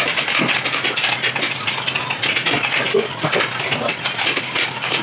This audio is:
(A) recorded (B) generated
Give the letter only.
A